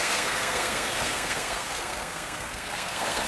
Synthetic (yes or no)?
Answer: yes